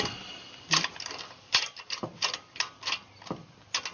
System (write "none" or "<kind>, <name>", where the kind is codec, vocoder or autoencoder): none